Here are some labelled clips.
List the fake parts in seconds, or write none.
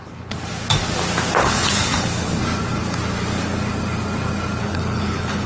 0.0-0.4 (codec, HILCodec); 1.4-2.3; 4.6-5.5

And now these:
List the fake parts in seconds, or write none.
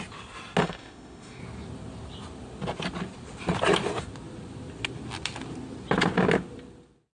0.6-1.4 (autoencoder, DAC-VAE)